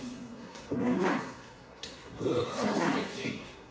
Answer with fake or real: fake